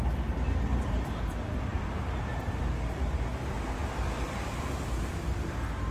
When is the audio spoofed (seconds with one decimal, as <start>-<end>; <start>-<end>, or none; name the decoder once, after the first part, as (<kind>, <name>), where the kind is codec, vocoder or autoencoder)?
0.7-1.2 (vocoder, BigVGAN v2)